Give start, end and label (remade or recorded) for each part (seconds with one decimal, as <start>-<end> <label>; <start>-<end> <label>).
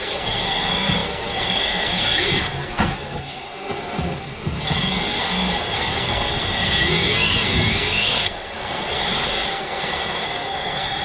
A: 0.0-9.0 remade; 9.0-9.5 recorded; 9.5-11.0 remade